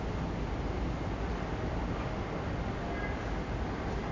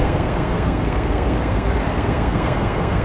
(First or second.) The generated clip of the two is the second